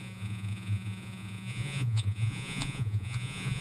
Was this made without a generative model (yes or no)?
no